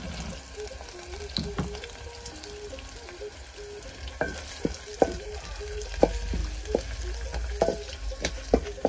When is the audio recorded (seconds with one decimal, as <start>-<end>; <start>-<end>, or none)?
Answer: 0.0-8.9